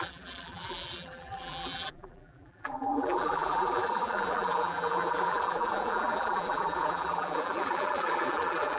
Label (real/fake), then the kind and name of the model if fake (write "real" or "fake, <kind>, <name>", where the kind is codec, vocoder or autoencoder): fake, vocoder, BigVGAN v2